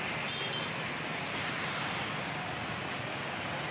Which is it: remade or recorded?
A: recorded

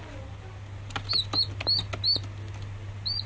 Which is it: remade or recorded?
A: recorded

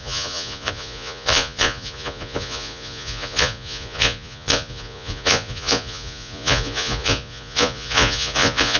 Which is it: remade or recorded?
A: remade